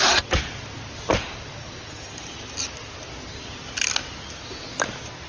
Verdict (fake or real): real